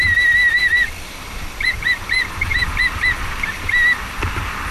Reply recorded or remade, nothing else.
recorded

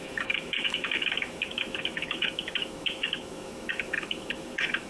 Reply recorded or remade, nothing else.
remade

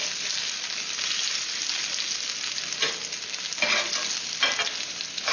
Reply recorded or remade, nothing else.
recorded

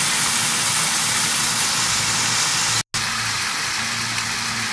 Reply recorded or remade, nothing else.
recorded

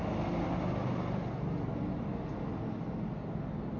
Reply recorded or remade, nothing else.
recorded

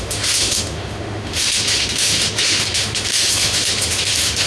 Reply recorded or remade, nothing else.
remade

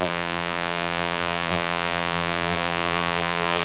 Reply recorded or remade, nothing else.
remade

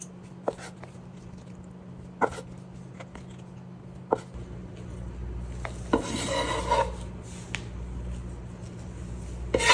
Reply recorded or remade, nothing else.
recorded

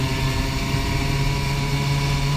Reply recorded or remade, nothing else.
recorded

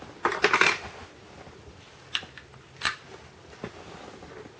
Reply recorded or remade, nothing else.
recorded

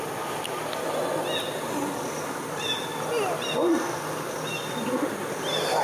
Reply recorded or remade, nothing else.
recorded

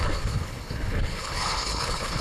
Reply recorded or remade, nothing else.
remade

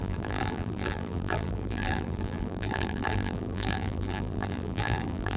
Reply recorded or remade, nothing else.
remade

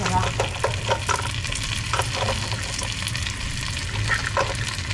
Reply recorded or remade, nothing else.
recorded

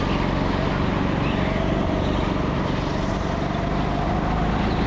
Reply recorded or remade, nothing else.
recorded